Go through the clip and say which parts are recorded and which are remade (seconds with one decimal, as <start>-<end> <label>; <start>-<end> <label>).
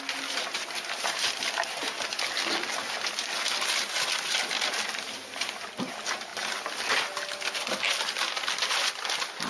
0.0-9.5 recorded